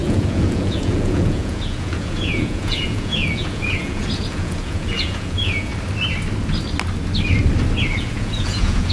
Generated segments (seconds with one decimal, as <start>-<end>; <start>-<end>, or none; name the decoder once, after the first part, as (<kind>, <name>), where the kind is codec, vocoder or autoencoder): 0.0-5.7 (vocoder, Vocos); 8.0-8.9